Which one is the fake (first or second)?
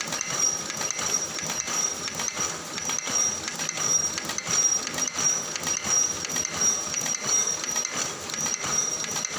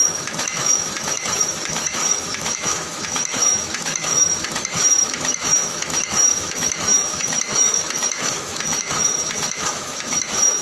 second